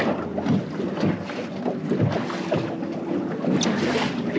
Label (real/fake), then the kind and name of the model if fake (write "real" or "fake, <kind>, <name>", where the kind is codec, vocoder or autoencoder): real